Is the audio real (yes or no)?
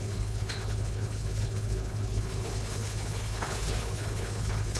no